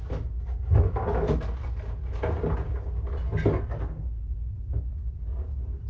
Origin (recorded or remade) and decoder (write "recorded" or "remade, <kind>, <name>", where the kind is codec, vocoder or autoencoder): recorded